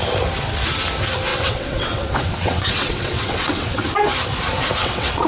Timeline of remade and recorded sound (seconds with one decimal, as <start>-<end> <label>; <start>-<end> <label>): 0.0-1.3 recorded; 1.3-3.8 remade; 3.8-4.8 recorded; 4.8-5.3 remade